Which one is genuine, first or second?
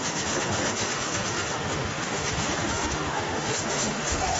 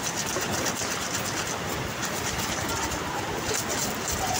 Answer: second